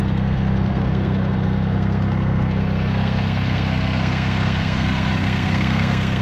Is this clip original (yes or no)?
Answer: no